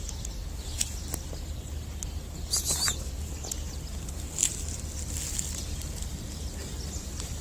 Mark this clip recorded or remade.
recorded